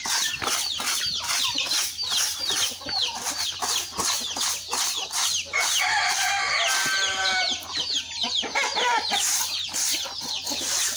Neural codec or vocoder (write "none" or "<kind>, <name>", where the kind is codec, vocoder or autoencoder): none